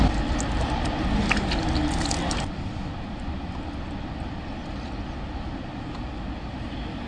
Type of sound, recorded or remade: recorded